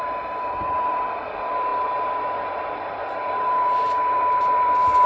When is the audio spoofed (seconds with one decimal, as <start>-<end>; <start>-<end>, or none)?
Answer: 0.0-5.1